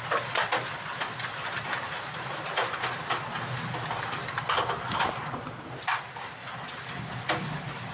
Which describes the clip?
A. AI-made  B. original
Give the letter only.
B